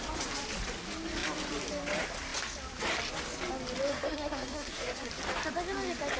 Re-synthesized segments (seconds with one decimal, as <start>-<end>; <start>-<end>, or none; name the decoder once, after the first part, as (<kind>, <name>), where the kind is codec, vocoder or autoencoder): 3.9-5.1 (codec, SNAC)